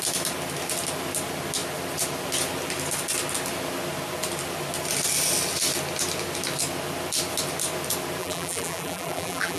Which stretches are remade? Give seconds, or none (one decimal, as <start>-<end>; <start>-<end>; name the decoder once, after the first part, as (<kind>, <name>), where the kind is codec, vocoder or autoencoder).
8.2-9.6 (vocoder, BigVGAN v2)